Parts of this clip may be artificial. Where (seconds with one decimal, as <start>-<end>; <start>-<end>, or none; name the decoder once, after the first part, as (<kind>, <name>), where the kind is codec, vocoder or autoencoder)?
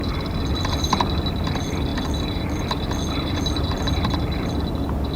none